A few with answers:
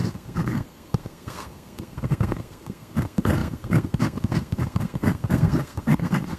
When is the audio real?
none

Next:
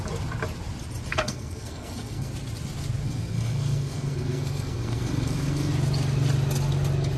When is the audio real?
0.0-1.1; 2.3-3.0; 5.7-7.2